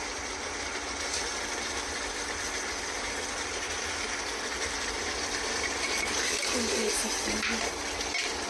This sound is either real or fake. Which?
real